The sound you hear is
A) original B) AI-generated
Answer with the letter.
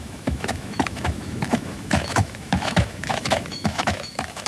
B